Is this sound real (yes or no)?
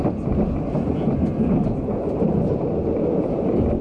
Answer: yes